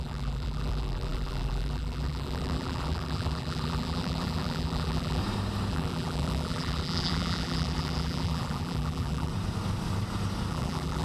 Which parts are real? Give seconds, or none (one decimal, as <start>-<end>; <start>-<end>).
5.2-5.7; 9.3-10.5